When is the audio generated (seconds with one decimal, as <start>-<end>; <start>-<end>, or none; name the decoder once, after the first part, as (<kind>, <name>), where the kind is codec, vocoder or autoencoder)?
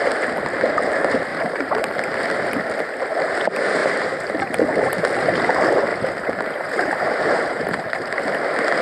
1.3-1.8 (vocoder, BigVGAN v2); 5.9-7.8